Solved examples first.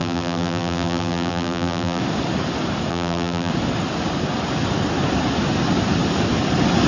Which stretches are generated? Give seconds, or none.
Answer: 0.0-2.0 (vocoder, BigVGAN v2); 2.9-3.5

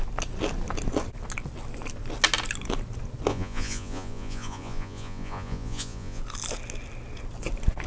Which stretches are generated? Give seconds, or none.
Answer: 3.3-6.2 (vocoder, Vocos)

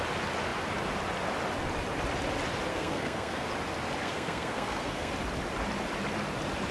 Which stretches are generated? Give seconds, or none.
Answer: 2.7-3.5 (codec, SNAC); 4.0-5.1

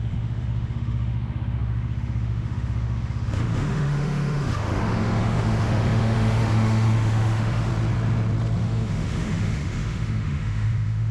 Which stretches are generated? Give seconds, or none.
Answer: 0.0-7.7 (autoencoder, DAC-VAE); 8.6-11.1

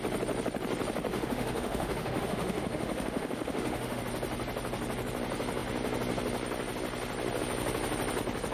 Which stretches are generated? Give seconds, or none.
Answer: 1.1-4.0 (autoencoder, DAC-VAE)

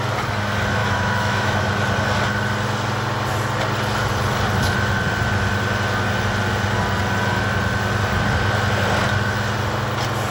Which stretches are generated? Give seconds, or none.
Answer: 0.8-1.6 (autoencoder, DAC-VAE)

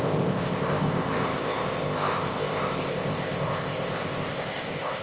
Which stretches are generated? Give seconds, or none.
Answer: 0.0-5.0 (codec, ZipCodec)

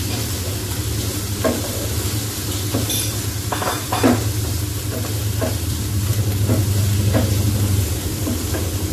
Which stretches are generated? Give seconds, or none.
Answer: none